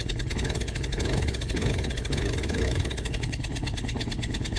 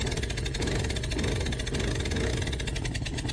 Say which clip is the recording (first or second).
second